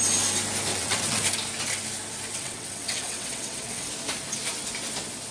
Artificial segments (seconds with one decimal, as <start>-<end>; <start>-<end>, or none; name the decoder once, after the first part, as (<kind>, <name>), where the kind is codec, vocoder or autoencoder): 0.7-1.2 (vocoder, WaveNeXt); 2.3-3.9